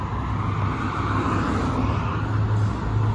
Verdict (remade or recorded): recorded